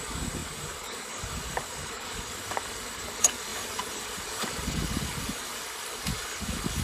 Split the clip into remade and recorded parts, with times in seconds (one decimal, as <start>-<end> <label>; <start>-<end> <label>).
0.0-6.8 remade